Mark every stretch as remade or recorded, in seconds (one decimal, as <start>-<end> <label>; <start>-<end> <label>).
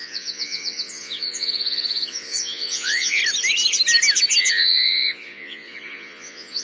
0.0-3.2 remade; 3.2-4.5 recorded; 4.5-6.6 remade